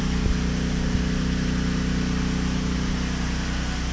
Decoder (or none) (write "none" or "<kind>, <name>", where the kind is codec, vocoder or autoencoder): none